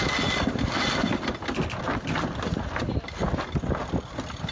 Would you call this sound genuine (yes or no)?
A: yes